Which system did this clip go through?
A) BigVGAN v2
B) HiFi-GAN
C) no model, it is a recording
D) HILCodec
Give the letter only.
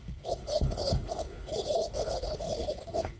D